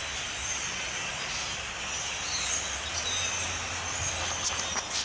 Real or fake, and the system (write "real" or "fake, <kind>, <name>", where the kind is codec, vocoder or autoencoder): real